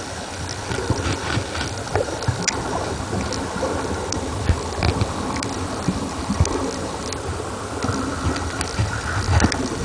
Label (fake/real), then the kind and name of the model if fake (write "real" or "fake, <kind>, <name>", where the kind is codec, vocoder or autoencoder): real